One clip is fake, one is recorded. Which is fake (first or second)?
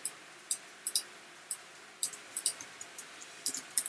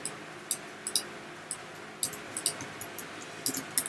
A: first